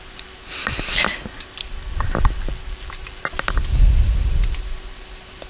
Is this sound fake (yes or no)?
no